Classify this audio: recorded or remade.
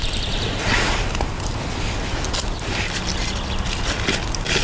recorded